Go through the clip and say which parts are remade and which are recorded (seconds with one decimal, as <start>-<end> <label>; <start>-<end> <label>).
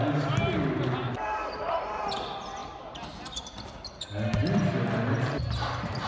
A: 0.0-2.6 recorded; 2.6-5.4 remade; 5.4-6.1 recorded